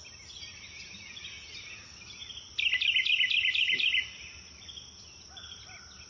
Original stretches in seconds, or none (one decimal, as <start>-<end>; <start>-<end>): 0.0-6.1